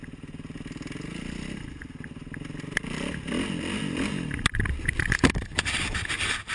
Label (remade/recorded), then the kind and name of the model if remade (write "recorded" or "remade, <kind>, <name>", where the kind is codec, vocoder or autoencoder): recorded